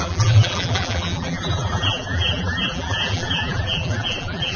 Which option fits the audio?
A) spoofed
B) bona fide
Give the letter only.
A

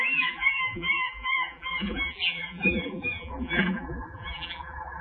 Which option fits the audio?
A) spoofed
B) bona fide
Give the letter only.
A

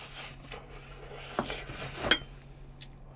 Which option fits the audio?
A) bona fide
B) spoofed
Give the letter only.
A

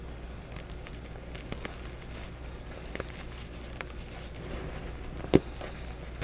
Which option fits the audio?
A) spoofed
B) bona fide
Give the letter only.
B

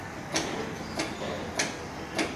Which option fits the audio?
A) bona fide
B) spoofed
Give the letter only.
A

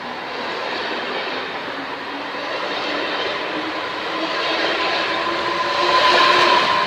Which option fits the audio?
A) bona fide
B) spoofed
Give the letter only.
A